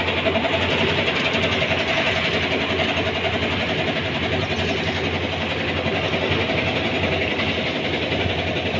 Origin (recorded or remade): recorded